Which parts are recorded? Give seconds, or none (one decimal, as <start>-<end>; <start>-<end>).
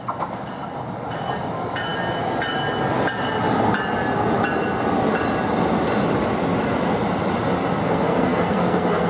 0.0-7.8